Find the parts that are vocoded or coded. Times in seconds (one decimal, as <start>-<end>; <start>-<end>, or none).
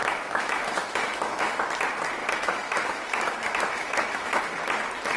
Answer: 0.0-1.6; 2.2-4.4